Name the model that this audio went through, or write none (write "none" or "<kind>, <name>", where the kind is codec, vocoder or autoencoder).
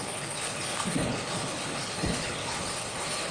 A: codec, HILCodec